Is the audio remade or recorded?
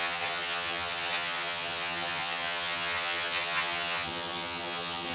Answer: remade